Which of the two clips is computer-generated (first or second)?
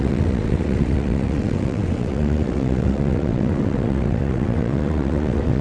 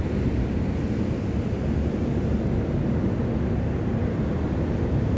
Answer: first